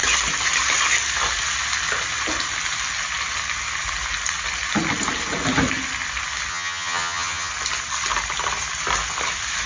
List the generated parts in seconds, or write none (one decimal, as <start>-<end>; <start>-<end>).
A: 6.5-7.5